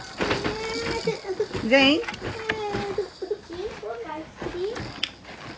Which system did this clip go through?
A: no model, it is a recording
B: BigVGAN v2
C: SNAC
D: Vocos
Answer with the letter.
A